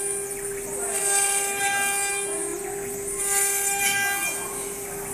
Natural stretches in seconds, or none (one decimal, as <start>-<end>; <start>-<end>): 0.0-5.1